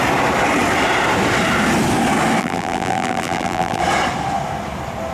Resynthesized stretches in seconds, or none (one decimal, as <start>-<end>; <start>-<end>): 2.4-3.8